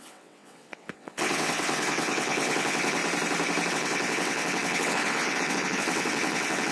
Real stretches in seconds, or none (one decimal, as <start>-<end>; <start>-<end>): 3.0-3.7